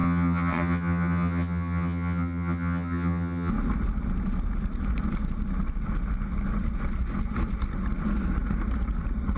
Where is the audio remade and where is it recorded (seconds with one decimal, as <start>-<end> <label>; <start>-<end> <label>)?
0.0-3.5 remade; 3.5-9.4 recorded